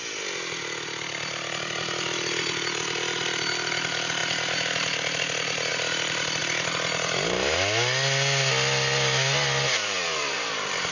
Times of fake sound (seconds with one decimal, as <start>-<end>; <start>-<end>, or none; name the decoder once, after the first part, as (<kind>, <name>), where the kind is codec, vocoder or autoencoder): 5.7-6.4 (vocoder, BigVGAN v2); 9.8-10.9